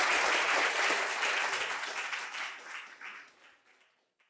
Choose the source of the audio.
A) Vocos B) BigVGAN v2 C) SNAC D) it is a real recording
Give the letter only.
D